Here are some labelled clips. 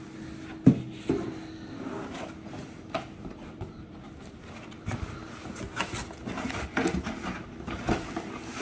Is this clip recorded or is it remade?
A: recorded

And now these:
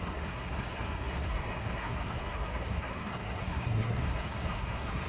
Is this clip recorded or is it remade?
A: remade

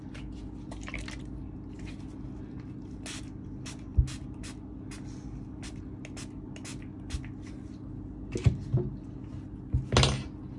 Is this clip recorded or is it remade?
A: recorded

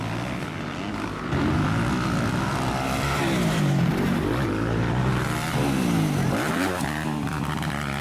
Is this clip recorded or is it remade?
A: recorded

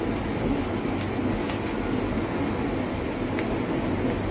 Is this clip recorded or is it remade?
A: recorded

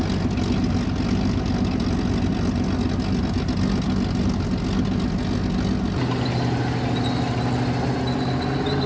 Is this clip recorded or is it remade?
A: recorded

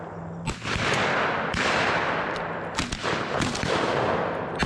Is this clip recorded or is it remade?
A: recorded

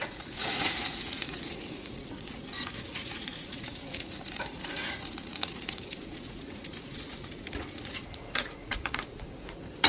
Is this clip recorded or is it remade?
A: remade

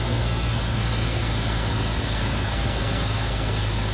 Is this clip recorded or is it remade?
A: remade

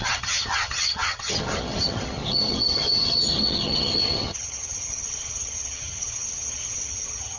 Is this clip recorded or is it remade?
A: remade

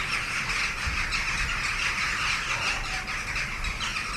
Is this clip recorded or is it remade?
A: recorded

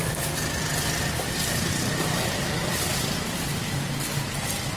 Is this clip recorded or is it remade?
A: recorded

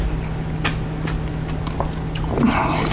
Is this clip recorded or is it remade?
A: recorded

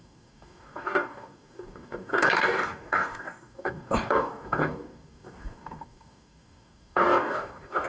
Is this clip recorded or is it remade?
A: remade